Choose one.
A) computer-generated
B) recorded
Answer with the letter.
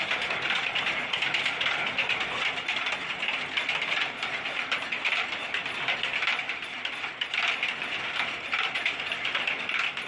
B